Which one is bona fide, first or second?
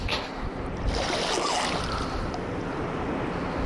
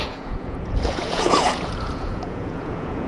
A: first